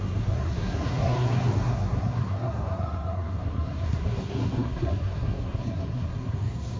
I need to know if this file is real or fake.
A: fake